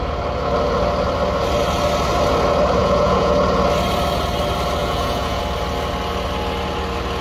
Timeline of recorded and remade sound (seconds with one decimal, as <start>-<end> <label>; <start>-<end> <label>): 0.0-2.8 recorded; 2.8-3.3 remade; 3.3-4.8 recorded; 4.8-5.4 remade; 5.4-7.2 recorded